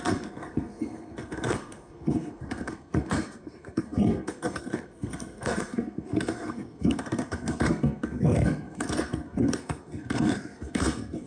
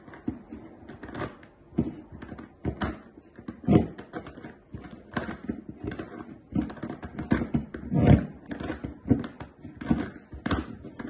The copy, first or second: first